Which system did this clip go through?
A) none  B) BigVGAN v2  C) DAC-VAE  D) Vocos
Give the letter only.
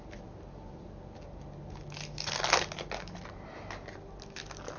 A